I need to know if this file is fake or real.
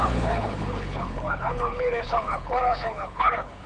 fake